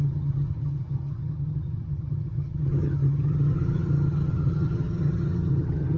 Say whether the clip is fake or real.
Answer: fake